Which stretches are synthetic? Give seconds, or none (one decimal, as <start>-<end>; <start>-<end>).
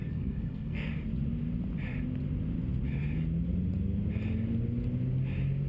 0.0-0.9